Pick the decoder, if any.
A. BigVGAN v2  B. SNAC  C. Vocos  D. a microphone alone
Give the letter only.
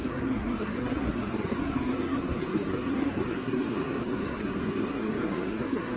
B